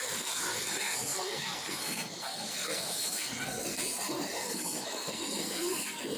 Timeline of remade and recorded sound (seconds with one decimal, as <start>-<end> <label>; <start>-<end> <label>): 0.0-6.2 remade